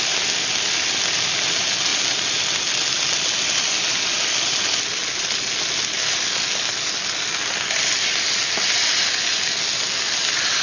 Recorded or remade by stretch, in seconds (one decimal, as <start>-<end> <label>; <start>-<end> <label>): 0.0-10.6 recorded